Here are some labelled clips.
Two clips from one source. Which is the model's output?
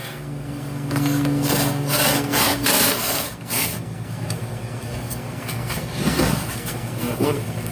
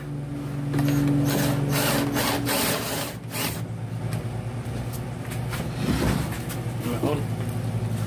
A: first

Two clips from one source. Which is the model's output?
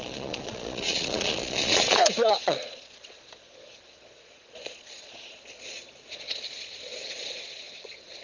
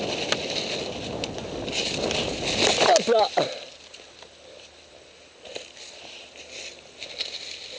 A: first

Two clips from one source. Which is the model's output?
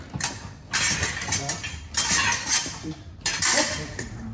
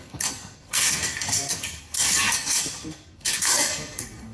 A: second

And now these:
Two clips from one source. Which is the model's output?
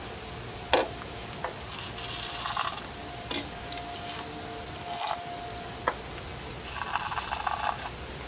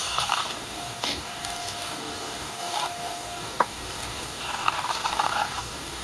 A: second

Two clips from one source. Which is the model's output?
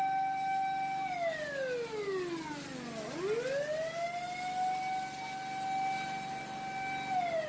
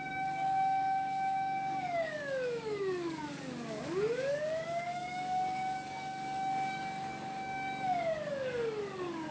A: second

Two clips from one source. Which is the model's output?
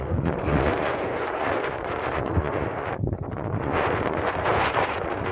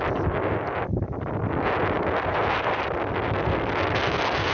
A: first